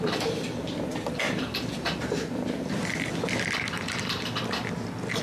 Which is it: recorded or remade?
recorded